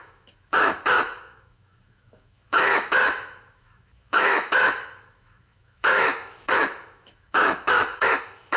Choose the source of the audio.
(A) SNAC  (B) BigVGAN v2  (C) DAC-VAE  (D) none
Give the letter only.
C